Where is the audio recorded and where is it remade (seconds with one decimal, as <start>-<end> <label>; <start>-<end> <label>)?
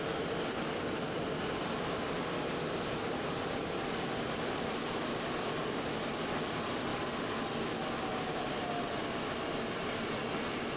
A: 0.0-10.8 recorded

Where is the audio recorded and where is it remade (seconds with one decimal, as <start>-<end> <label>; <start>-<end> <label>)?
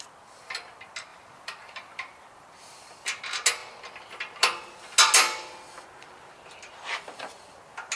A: 0.0-1.1 recorded; 1.1-3.2 remade; 3.2-8.0 recorded